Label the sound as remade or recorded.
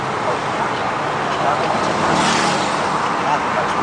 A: recorded